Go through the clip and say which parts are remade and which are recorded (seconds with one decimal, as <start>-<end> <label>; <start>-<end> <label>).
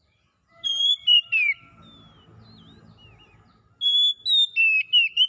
0.0-0.5 recorded; 0.5-1.6 remade; 1.6-5.3 recorded